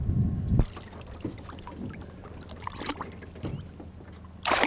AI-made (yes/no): no